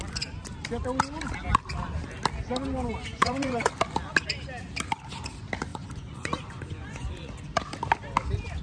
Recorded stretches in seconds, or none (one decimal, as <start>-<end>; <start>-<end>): 0.0-3.1; 3.7-5.7; 7.3-8.6